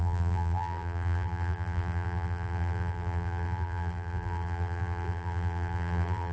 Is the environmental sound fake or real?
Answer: fake